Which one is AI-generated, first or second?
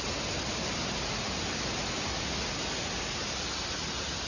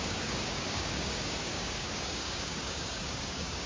second